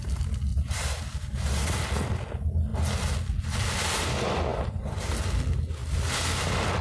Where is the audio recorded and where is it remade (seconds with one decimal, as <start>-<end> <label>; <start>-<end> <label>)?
0.0-0.5 recorded; 0.5-1.6 remade; 1.6-4.5 recorded; 4.5-5.1 remade; 5.1-6.8 recorded